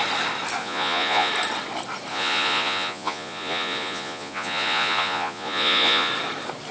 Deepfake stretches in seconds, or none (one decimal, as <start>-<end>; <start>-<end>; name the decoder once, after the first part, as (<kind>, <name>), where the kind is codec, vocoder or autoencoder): 0.6-1.3 (vocoder, Vocos); 2.1-6.1